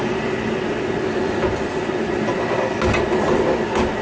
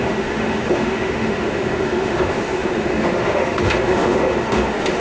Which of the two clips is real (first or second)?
first